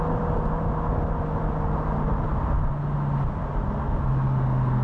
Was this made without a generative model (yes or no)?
yes